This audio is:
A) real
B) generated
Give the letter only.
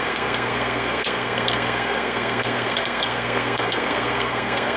B